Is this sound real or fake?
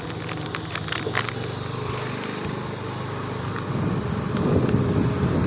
real